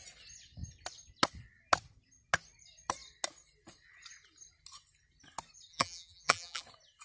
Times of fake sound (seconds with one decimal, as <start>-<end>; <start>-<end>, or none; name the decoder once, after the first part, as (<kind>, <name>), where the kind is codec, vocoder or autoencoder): 5.7-6.6 (vocoder, BigVGAN v2)